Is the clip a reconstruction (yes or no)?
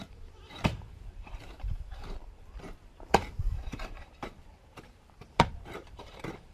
yes